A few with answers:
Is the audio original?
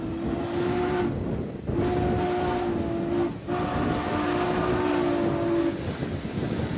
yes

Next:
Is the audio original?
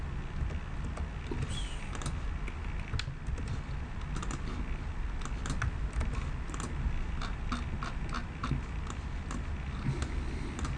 yes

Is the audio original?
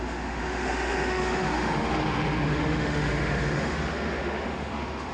no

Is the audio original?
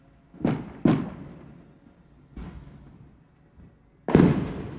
yes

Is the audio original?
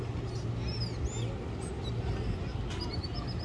yes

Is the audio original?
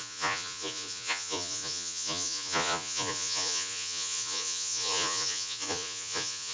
no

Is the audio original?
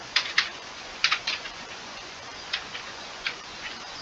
no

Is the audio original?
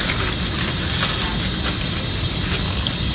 yes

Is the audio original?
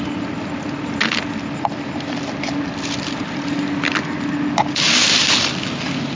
yes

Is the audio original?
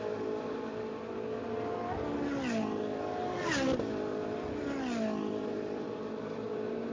yes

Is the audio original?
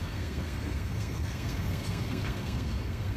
no